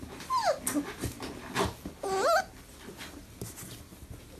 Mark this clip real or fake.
real